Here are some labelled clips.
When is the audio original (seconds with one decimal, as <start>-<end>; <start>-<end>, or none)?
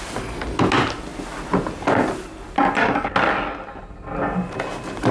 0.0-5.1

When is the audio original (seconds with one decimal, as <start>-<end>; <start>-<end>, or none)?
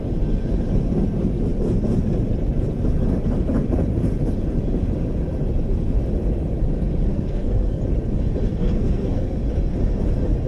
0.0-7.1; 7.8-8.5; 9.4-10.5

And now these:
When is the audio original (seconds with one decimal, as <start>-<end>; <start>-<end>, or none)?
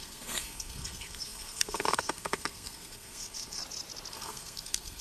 3.6-4.1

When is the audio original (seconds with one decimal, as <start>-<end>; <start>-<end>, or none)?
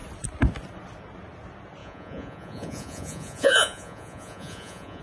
0.0-1.8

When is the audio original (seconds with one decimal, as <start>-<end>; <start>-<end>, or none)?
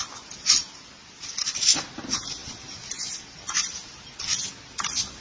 0.0-5.2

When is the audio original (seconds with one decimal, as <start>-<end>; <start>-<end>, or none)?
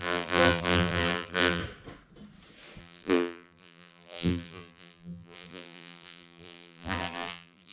1.6-2.8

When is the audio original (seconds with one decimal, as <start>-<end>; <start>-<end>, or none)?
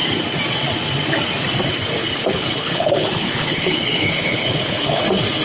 0.0-2.0; 5.0-5.4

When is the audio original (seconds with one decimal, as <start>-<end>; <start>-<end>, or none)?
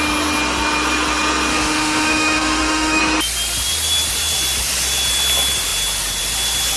0.0-1.5; 3.0-6.8